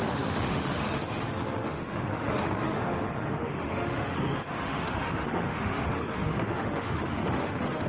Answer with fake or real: fake